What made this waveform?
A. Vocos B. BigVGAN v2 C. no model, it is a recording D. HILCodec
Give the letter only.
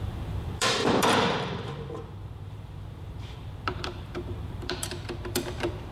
B